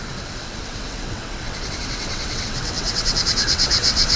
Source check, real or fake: fake